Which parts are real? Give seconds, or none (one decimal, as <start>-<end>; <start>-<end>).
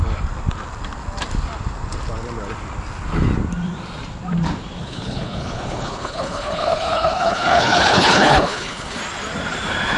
0.0-4.8; 9.0-10.0